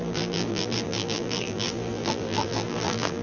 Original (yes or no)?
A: no